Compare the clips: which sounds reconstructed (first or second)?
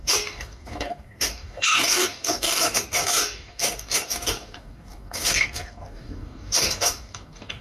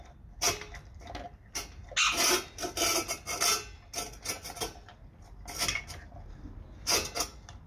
first